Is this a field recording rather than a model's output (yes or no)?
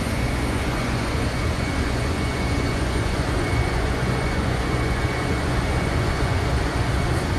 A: no